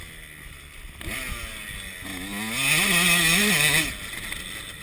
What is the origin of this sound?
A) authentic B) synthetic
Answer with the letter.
A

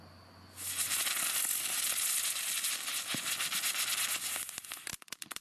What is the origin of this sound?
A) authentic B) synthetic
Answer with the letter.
A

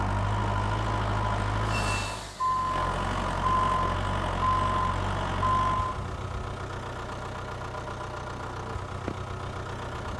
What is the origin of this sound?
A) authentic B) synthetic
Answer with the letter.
A